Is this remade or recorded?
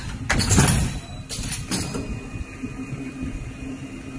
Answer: recorded